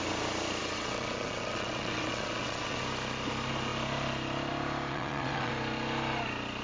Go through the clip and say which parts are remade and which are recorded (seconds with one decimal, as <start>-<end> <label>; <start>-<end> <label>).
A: 0.0-0.6 recorded; 0.6-2.8 remade; 2.8-4.9 recorded; 4.9-5.5 remade; 5.5-6.6 recorded